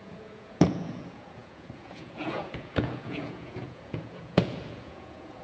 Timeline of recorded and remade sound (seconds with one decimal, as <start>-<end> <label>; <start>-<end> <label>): 0.0-5.4 remade